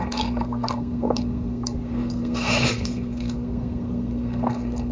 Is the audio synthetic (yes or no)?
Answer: yes